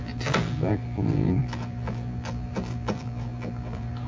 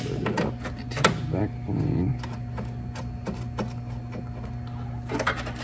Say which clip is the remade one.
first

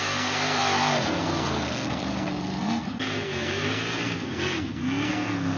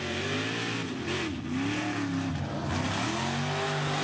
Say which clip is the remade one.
first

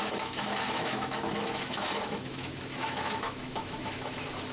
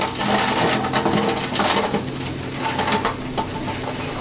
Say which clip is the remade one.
first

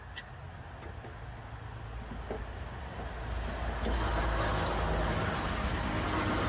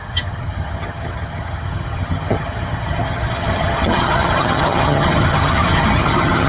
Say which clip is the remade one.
second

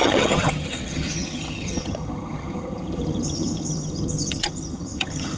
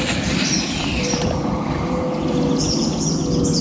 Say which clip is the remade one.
first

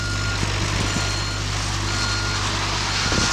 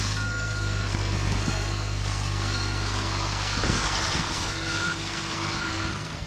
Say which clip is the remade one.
second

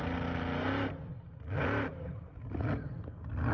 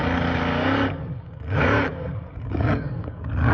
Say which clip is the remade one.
second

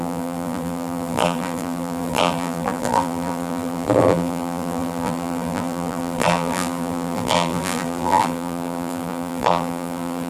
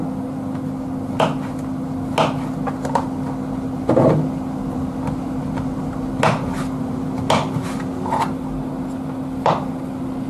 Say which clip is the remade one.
first